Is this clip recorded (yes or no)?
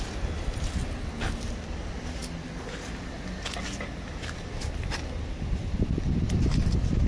yes